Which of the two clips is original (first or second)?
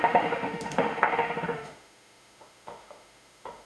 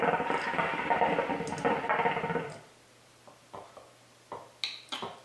second